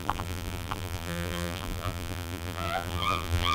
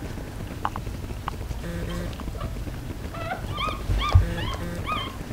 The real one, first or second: second